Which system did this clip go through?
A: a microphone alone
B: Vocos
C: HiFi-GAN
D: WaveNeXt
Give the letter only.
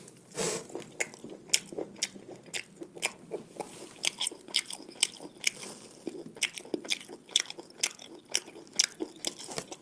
A